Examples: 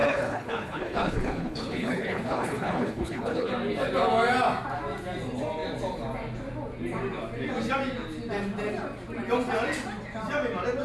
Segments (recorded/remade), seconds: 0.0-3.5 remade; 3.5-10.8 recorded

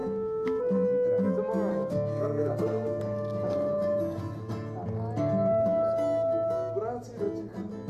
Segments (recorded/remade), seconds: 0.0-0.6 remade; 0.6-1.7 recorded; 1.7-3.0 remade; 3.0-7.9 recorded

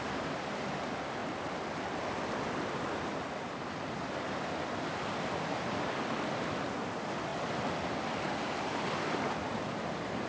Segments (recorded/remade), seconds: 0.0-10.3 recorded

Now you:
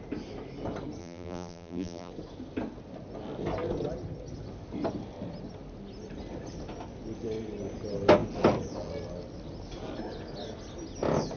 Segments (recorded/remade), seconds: 0.0-1.0 recorded; 1.0-2.1 remade; 2.1-11.4 recorded

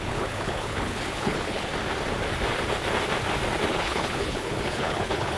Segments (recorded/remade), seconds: 0.0-1.7 remade; 1.7-3.7 recorded; 3.7-5.4 remade